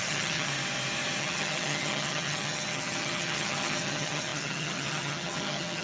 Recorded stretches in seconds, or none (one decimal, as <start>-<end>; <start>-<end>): 0.5-1.2